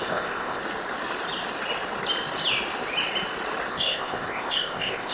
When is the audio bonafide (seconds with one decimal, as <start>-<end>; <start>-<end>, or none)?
0.6-3.7